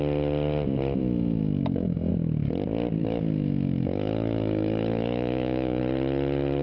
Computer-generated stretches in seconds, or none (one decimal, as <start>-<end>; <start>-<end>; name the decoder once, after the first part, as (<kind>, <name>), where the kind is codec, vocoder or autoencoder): 1.0-2.1 (autoencoder, DAC-VAE); 3.0-5.8